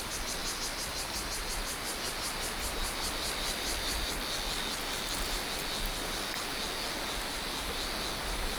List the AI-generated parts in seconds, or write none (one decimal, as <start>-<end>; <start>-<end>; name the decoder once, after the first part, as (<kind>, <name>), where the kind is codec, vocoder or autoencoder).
0.4-1.3 (vocoder, BigVGAN v2); 2.8-4.1